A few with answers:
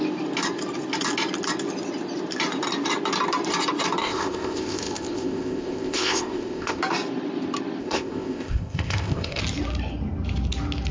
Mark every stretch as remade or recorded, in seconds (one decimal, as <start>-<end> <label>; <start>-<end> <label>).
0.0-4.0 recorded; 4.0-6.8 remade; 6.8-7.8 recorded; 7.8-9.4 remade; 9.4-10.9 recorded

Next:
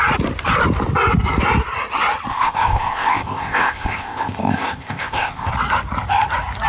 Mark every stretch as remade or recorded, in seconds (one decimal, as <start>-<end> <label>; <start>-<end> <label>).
0.0-2.3 recorded; 2.3-5.5 remade; 5.5-6.7 recorded

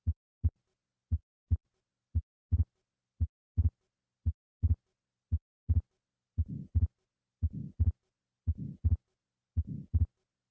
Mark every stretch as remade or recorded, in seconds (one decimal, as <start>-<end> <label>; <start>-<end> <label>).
0.0-10.5 recorded

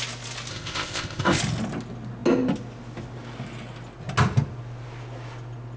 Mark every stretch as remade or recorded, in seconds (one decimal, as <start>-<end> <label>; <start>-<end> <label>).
0.0-0.5 recorded; 0.5-1.4 remade; 1.4-5.8 recorded